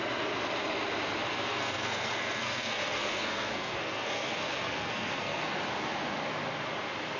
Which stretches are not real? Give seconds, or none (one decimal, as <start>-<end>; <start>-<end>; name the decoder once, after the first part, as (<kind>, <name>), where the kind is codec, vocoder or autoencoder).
1.3-5.6 (codec, SNAC)

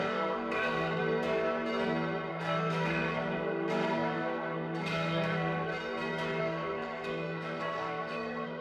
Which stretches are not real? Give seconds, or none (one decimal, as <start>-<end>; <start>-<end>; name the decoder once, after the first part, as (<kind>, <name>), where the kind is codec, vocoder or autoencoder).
0.0-1.0 (codec, SNAC); 2.3-5.7; 6.4-8.6

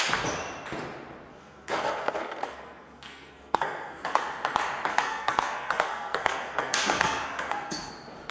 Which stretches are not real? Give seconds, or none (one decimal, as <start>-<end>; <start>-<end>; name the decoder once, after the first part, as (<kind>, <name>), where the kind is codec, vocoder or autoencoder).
1.3-4.2 (codec, SNAC); 4.9-7.9

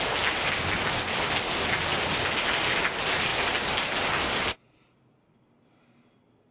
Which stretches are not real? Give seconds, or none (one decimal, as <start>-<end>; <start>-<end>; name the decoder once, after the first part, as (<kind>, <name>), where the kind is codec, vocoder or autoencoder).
none